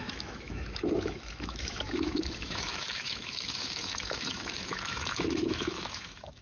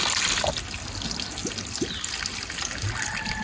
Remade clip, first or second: first